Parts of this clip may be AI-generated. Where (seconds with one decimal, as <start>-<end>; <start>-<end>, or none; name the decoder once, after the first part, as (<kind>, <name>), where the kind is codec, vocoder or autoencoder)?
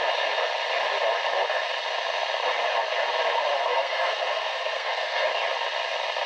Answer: 3.6-5.3 (codec, SNAC)